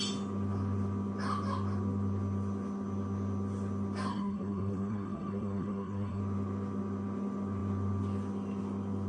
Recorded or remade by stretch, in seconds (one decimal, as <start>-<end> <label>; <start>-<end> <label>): 0.0-4.1 recorded; 4.1-6.2 remade; 6.2-9.1 recorded